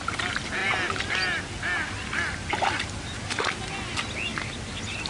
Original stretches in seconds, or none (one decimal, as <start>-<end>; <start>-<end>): 0.0-5.1